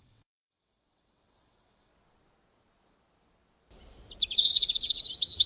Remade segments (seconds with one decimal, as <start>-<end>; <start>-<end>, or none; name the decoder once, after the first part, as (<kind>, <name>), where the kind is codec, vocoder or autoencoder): 0.0-1.9 (vocoder, WaveNeXt); 4.3-5.5